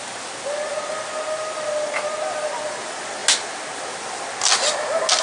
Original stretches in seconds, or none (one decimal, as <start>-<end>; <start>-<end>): 0.0-5.2